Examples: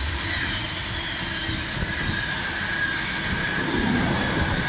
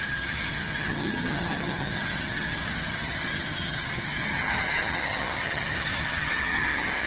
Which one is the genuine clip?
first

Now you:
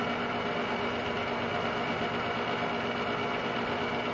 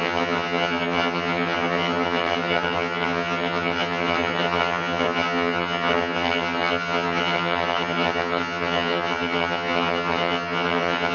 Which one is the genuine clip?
first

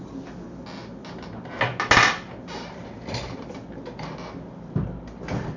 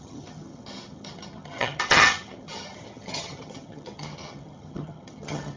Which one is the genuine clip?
first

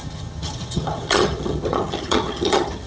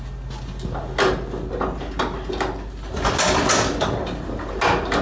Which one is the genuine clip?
second